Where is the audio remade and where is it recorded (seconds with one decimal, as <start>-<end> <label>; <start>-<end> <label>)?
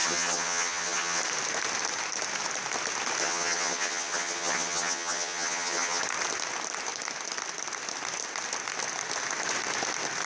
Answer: 0.0-1.2 remade; 1.2-3.2 recorded; 3.2-6.0 remade; 6.0-10.3 recorded